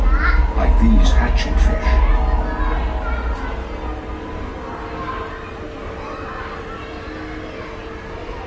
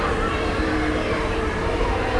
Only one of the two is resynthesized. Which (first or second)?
second